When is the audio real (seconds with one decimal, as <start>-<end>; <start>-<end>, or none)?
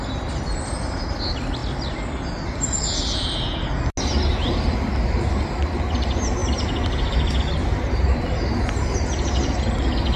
0.0-10.2